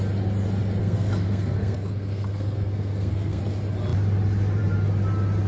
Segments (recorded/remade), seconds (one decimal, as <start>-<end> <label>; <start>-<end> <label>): 0.0-0.8 recorded; 0.8-3.4 remade; 3.4-5.5 recorded